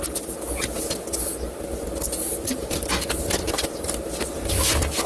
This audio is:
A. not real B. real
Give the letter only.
B